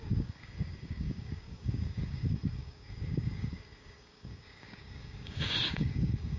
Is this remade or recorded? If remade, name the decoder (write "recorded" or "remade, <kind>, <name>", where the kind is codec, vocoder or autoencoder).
remade, codec, DAC